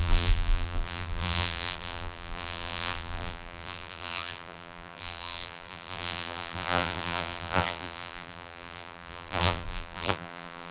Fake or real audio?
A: fake